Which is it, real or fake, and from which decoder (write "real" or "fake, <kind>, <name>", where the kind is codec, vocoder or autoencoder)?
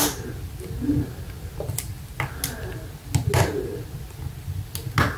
real